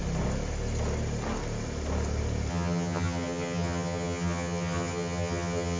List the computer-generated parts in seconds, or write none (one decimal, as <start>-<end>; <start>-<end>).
2.5-5.8